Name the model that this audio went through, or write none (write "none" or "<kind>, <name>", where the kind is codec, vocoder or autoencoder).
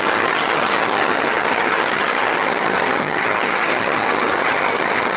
vocoder, HiFi-GAN